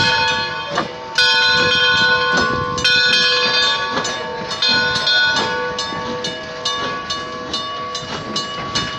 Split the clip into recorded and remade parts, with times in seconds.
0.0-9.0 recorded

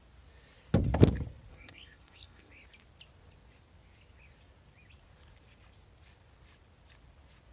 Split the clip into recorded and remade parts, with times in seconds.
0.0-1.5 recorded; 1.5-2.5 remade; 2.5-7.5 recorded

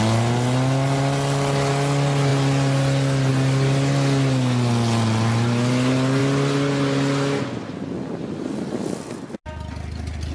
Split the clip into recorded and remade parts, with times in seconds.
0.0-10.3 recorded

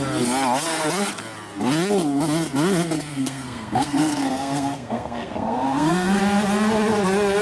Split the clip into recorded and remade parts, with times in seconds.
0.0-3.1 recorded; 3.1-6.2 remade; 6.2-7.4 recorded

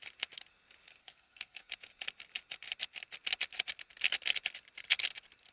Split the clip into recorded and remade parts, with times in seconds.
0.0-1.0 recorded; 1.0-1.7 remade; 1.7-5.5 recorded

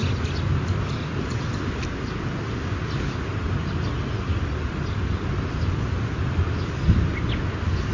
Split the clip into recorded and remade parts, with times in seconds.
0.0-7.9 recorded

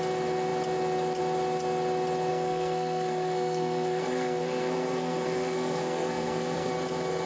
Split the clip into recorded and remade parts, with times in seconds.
0.0-2.3 recorded; 2.3-6.7 remade; 6.7-7.3 recorded